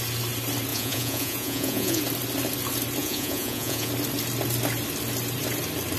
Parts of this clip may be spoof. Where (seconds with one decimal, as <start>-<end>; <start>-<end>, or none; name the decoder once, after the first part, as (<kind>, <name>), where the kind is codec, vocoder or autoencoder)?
0.7-2.0 (vocoder, Vocos); 3.0-3.9